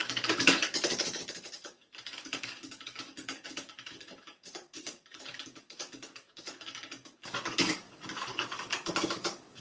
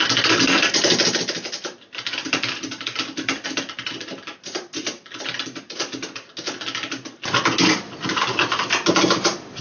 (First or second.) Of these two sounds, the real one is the second